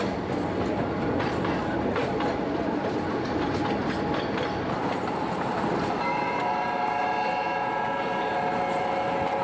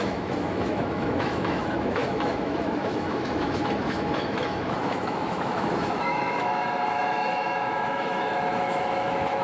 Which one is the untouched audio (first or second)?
first